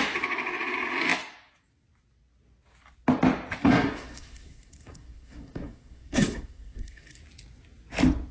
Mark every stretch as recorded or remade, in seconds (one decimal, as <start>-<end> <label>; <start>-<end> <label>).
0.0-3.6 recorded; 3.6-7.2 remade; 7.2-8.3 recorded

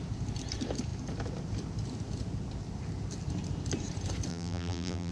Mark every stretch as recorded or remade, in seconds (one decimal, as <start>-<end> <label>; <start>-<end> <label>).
0.0-4.3 recorded; 4.3-5.1 remade

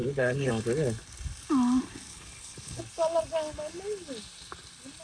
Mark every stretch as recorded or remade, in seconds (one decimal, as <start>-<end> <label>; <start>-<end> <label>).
0.0-0.5 remade; 0.5-2.1 recorded; 2.1-2.8 remade; 2.8-5.0 recorded

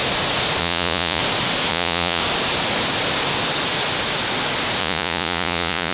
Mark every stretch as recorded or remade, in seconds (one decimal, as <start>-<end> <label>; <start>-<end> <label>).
0.0-0.6 recorded; 0.6-1.2 remade; 1.2-1.7 recorded; 1.7-2.2 remade; 2.2-4.8 recorded; 4.8-5.9 remade